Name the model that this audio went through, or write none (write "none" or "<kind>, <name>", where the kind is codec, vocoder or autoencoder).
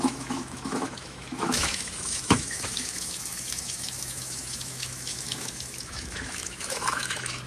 autoencoder, DAC-VAE